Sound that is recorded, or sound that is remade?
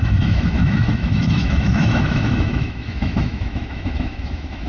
remade